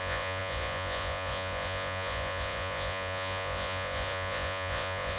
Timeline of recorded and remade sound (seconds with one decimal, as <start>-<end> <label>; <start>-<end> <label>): 0.0-5.2 remade